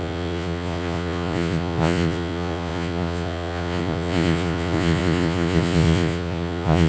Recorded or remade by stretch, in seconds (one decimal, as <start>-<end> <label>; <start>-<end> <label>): 0.0-6.9 remade

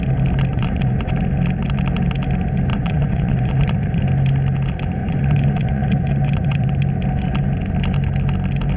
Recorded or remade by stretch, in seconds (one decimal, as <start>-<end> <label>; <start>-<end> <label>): 0.0-0.5 recorded; 0.5-1.1 remade; 1.1-2.7 recorded; 2.7-4.0 remade; 4.0-5.0 recorded; 5.0-6.7 remade; 6.7-8.8 recorded

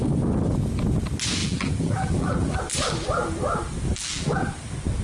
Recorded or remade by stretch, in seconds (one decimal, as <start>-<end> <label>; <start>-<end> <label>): 0.0-1.4 recorded; 1.4-2.6 remade; 2.6-3.9 recorded; 3.9-4.4 remade; 4.4-5.0 recorded

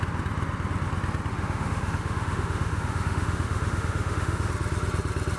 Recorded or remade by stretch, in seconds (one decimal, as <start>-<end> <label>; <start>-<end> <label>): 0.0-1.3 recorded; 1.3-4.5 remade; 4.5-5.4 recorded

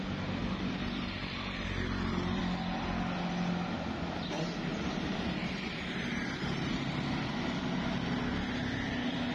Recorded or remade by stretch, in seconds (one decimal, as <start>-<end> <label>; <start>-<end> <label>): 0.0-0.4 recorded; 0.4-2.4 remade; 2.4-4.7 recorded; 4.7-6.7 remade; 6.7-9.3 recorded

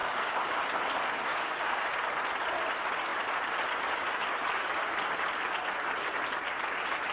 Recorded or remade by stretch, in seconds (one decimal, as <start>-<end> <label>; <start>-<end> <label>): 0.0-0.6 remade; 0.6-1.3 recorded; 1.3-1.9 remade; 1.9-7.1 recorded

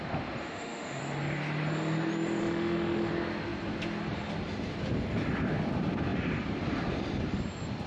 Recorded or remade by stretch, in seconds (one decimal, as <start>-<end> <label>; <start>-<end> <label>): 0.0-0.4 recorded; 0.4-1.0 remade; 1.0-2.4 recorded; 2.4-3.1 remade; 3.1-7.9 recorded